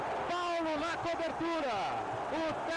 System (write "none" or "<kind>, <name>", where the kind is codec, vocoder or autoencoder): none